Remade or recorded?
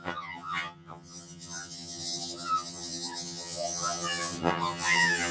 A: remade